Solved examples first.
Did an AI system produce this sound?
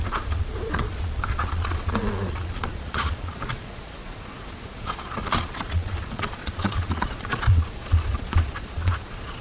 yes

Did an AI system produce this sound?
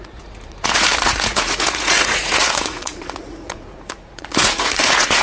yes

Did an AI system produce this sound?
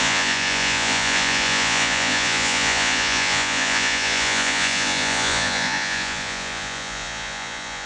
yes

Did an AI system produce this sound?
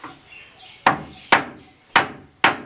no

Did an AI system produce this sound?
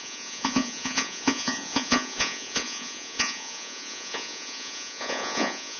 yes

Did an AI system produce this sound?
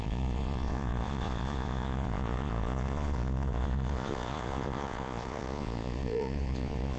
yes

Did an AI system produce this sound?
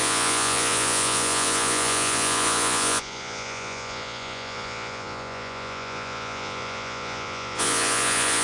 yes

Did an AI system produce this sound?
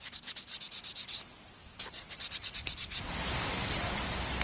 no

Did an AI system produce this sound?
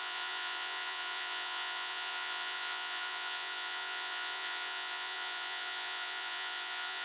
yes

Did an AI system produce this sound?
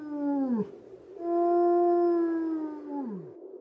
no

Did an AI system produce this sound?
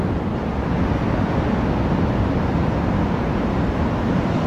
no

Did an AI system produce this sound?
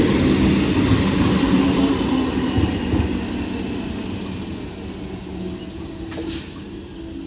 no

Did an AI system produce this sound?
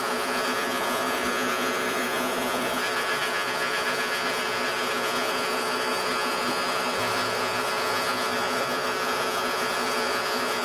yes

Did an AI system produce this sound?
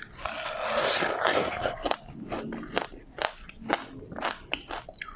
no